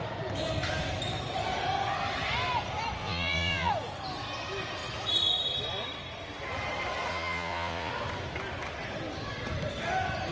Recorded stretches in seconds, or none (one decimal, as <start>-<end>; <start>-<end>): 0.0-3.0; 3.7-7.1; 7.9-10.3